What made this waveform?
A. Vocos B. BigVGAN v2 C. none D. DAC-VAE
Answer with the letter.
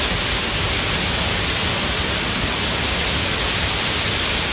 C